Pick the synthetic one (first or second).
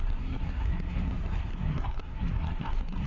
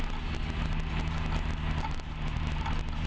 first